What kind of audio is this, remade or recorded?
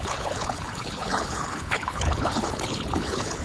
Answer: remade